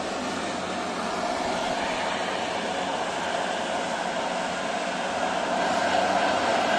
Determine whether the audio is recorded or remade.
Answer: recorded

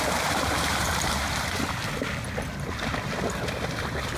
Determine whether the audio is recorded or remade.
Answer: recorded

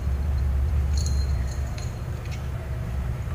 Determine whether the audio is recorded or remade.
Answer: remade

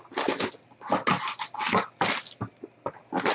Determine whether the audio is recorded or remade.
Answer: recorded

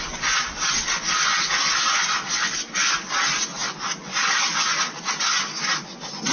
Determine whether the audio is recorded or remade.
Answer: recorded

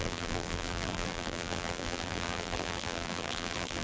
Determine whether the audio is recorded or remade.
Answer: remade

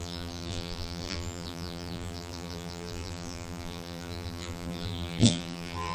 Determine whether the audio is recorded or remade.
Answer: remade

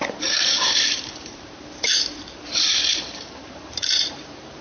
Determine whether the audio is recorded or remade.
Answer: remade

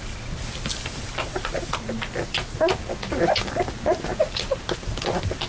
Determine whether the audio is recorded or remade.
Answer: recorded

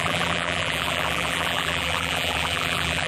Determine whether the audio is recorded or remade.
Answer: remade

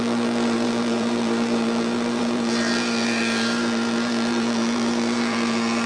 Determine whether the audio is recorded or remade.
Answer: remade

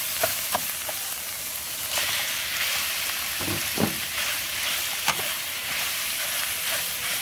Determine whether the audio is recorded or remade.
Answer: remade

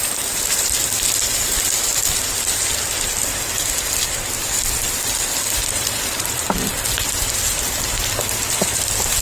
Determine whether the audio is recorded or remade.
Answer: remade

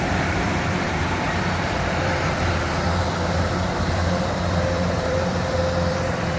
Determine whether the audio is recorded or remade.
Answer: remade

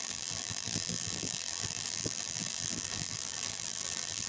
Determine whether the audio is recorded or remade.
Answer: remade